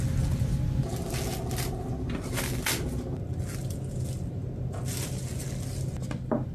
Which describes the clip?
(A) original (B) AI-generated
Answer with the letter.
A